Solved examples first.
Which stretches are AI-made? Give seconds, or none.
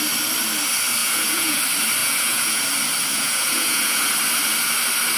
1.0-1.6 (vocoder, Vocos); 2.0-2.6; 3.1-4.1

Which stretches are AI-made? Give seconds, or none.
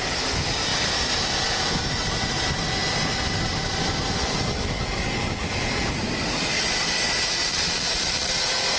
7.4-8.3 (vocoder, Vocos)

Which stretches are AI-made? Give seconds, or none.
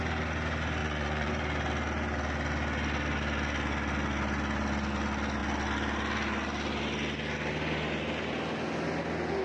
0.8-1.3 (vocoder, Vocos)